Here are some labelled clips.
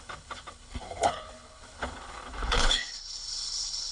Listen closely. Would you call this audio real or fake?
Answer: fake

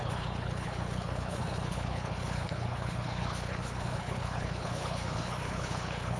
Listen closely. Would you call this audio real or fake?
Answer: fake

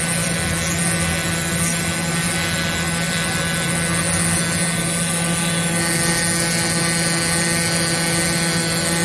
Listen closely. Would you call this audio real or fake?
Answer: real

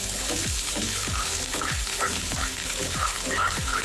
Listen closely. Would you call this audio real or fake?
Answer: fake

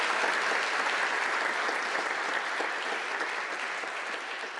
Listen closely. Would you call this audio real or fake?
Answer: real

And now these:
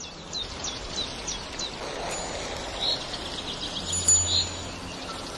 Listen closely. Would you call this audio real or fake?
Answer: real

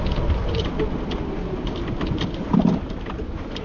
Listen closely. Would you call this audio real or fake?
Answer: real